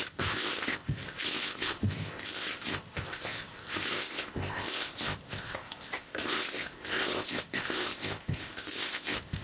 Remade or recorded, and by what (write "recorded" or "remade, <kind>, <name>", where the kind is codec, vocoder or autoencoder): remade, codec, ZipCodec